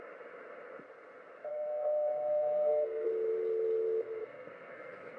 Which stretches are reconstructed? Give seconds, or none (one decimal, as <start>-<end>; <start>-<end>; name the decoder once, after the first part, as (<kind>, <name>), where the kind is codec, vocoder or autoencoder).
1.5-3.1 (codec, SNAC); 4.2-5.2